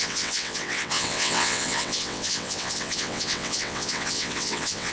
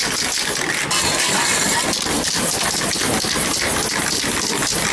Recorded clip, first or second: second